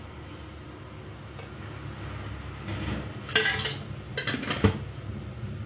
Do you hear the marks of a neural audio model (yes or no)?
no